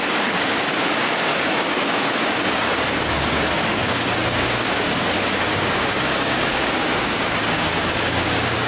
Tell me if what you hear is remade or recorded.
remade